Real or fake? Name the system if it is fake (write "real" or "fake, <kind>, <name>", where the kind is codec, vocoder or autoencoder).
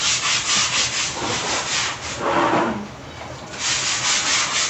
real